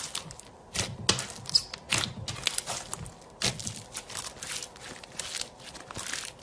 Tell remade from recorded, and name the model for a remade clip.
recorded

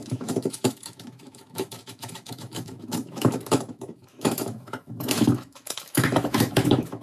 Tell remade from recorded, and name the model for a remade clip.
remade, autoencoder, DAC-VAE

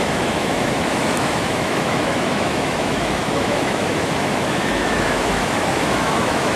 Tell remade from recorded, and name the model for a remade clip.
remade, autoencoder, DAC-VAE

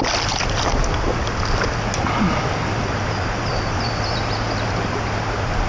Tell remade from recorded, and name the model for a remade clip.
recorded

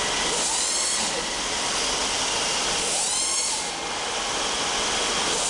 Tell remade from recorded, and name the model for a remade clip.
recorded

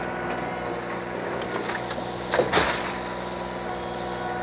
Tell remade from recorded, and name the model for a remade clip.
recorded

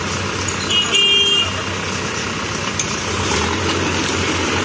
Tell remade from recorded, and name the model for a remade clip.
recorded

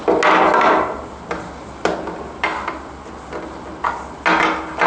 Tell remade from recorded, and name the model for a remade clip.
recorded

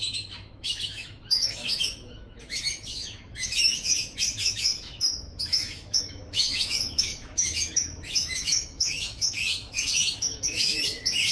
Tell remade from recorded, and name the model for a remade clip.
remade, autoencoder, DAC-VAE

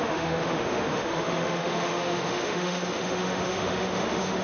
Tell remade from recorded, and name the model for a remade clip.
remade, autoencoder, DAC-VAE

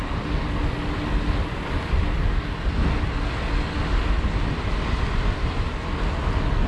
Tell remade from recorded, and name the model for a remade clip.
recorded